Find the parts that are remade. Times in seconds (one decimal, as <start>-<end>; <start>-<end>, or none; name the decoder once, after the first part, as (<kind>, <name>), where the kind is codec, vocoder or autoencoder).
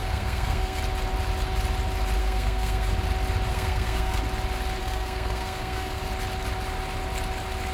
0.0-0.8 (codec, SNAC); 2.2-2.9; 3.5-4.2; 4.8-6.0